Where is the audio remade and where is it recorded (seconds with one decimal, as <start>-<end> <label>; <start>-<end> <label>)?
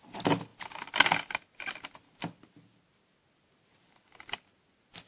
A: 0.0-5.1 recorded